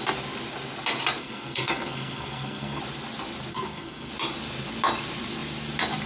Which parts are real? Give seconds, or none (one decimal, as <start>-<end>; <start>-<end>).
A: 0.0-1.2; 2.8-3.5; 4.1-6.1